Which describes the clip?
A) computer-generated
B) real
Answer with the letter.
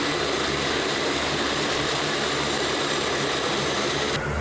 A